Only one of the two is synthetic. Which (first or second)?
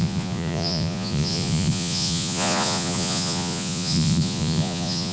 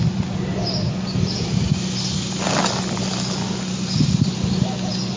first